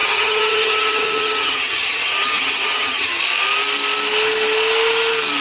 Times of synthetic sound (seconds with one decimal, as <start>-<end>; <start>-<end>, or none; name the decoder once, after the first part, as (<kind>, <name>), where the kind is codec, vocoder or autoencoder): 0.0-3.2 (vocoder, HiFi-GAN)